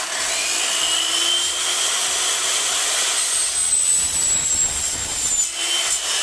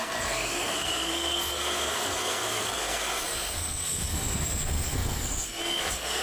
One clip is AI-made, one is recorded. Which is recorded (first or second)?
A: first